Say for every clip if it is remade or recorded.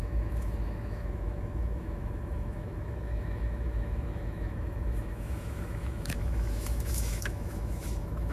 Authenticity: remade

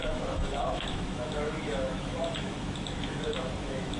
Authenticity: remade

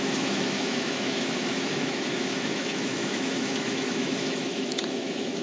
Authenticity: remade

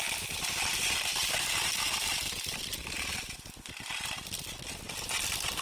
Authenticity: recorded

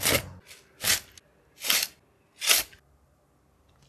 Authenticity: recorded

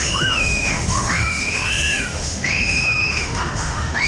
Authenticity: remade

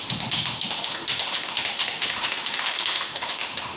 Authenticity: remade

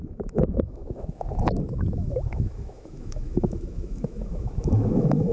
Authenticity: remade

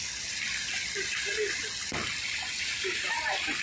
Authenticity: recorded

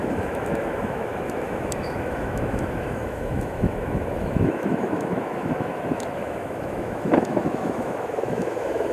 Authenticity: remade